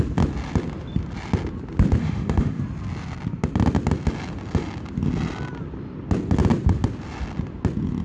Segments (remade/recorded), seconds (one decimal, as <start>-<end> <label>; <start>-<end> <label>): 0.0-2.0 recorded; 2.0-2.6 remade; 2.6-8.0 recorded